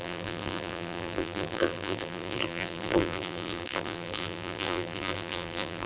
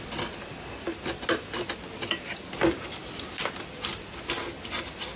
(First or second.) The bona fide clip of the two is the second